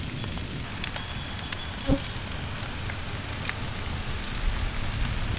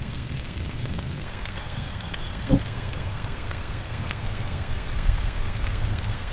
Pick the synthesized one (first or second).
second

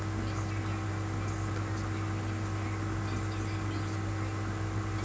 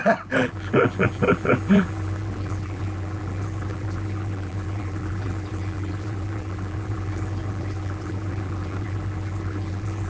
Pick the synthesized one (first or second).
second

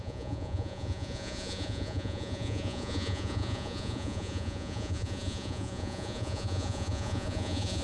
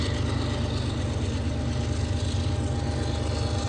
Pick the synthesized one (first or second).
first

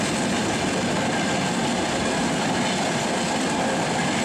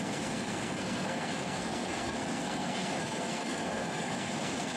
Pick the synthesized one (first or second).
second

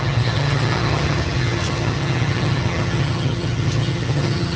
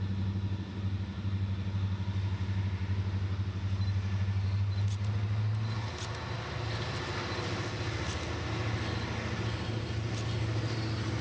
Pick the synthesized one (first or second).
first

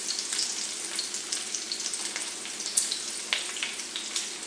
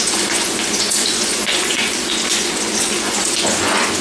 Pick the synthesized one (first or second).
second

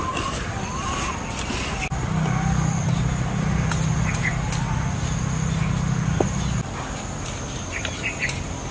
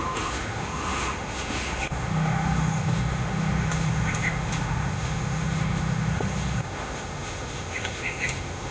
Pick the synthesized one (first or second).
second